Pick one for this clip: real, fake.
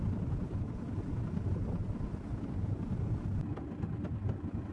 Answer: real